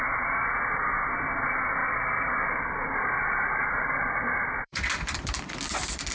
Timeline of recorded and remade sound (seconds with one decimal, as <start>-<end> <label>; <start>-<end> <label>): 0.0-1.8 recorded; 1.8-5.5 remade; 5.5-6.1 recorded